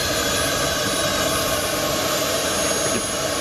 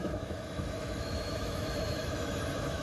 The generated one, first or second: second